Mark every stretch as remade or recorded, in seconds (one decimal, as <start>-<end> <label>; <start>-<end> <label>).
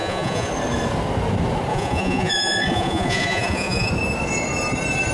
0.0-0.5 remade; 0.5-1.7 recorded; 1.7-3.9 remade; 3.9-5.1 recorded